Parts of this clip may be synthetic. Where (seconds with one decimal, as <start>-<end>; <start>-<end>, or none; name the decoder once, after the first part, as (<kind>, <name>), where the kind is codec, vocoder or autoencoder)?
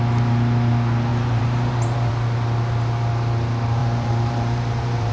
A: 1.1-2.1 (vocoder, BigVGAN v2); 3.8-5.1